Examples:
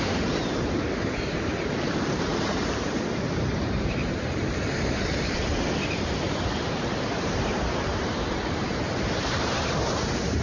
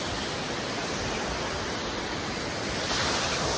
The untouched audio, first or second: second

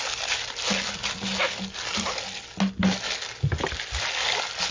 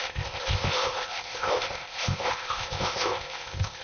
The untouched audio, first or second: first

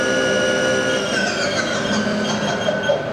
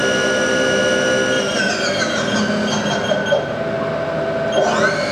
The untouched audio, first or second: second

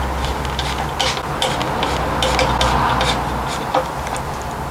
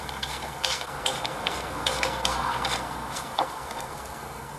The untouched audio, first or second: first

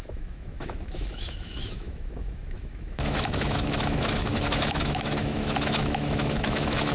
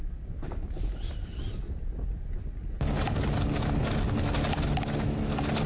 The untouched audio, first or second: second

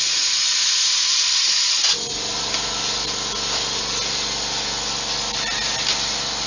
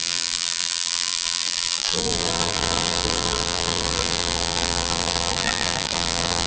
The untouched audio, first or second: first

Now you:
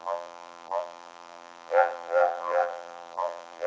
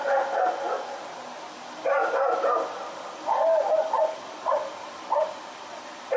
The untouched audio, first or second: second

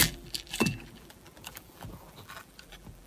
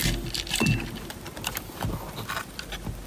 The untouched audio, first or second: second